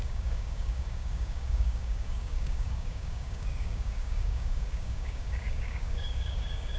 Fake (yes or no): yes